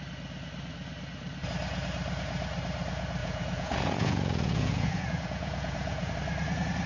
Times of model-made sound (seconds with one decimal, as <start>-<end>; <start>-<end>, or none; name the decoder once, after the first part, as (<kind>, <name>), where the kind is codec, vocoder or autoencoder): 3.2-6.1 (vocoder, Vocos)